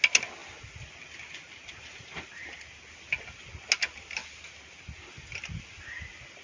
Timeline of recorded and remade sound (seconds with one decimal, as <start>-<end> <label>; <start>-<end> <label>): 0.0-6.4 recorded